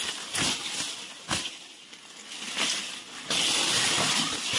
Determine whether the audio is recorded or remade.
recorded